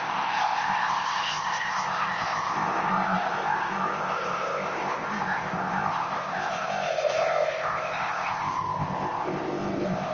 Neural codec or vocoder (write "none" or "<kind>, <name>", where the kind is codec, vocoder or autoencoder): codec, ZipCodec